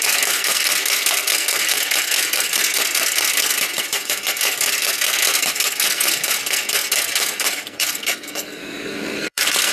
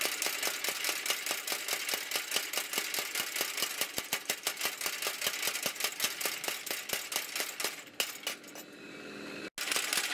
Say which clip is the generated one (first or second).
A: first